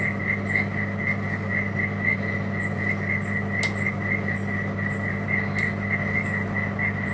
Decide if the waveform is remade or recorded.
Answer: recorded